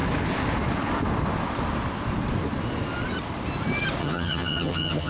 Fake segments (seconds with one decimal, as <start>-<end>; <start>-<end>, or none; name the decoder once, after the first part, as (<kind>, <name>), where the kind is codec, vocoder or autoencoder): 4.0-5.1 (vocoder, HiFi-GAN)